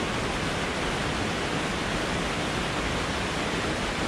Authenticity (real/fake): real